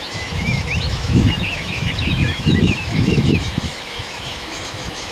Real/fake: fake